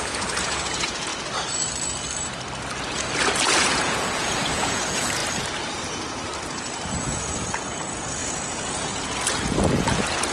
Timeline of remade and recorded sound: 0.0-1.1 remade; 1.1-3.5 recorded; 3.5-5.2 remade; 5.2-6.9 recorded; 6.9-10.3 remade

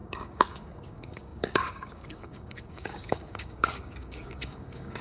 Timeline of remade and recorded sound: 0.0-5.0 remade

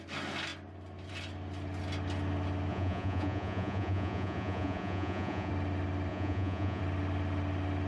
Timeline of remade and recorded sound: 0.0-2.7 recorded; 2.7-5.5 remade; 5.5-6.1 recorded; 6.1-6.8 remade; 6.8-7.9 recorded

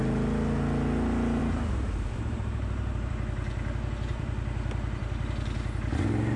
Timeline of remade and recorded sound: 0.0-1.4 recorded; 1.4-3.1 remade; 3.1-4.1 recorded; 4.1-5.2 remade; 5.2-6.4 recorded